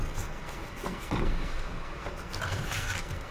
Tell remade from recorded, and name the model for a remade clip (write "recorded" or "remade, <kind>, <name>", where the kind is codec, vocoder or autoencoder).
remade, codec, SNAC